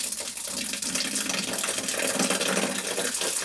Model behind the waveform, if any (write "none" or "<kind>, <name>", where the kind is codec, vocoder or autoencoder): none